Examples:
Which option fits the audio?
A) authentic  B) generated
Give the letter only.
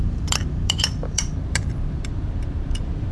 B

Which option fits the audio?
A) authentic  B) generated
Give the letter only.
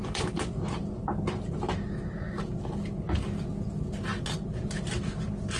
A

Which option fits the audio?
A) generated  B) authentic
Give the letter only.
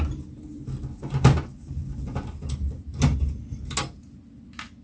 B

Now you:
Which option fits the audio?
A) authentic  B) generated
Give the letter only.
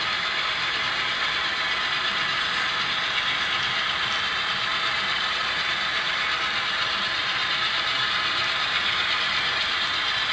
B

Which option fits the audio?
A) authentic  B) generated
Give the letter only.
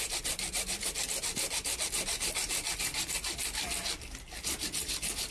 B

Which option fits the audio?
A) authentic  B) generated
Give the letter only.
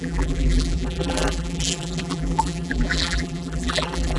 B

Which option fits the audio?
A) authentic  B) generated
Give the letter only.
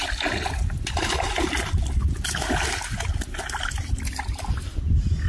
A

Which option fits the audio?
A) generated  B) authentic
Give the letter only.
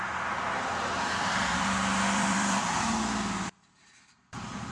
A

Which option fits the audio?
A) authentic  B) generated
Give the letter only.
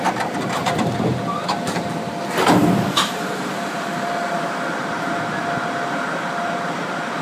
B